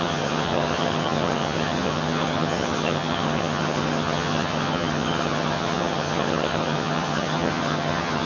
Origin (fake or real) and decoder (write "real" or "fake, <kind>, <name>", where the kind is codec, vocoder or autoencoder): fake, vocoder, HiFi-GAN